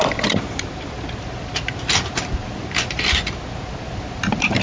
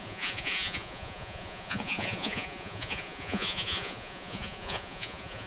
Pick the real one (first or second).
first